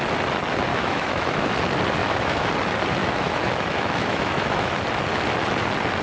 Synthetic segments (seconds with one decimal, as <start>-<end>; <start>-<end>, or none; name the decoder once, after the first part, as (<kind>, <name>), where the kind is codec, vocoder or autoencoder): 0.7-1.5 (autoencoder, DAC-VAE); 2.0-2.5; 3.0-4.7